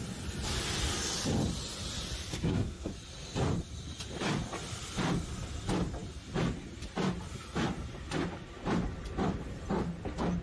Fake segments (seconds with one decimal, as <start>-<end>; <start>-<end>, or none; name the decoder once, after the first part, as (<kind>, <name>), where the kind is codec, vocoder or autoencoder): 2.3-2.9 (codec, SNAC)